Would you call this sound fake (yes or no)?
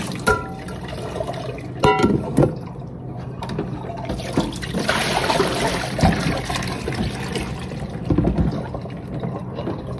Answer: no